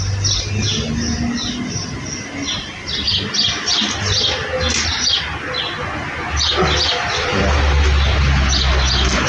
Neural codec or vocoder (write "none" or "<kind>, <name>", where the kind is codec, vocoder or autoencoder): none